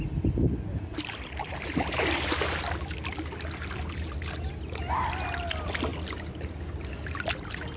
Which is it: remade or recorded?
recorded